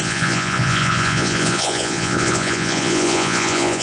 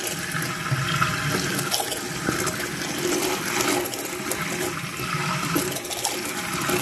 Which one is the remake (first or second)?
first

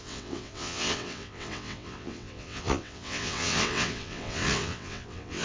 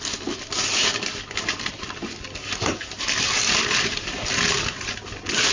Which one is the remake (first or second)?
first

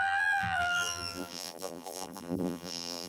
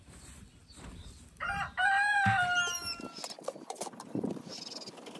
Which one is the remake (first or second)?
first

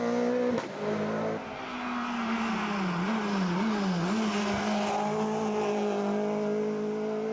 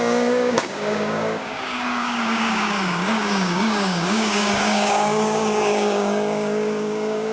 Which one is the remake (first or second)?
second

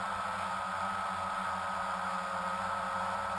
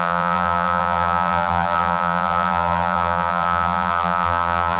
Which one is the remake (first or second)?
second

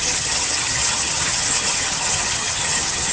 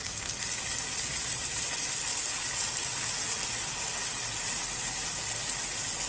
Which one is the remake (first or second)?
first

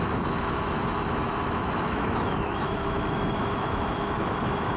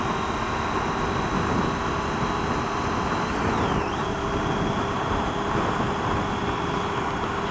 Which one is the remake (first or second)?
first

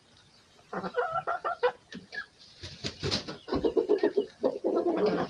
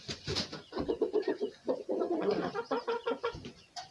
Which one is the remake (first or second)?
second